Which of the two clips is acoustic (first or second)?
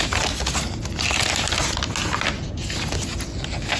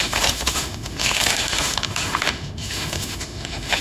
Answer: first